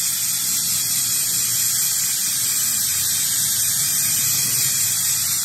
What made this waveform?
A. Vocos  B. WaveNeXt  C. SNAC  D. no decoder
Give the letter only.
D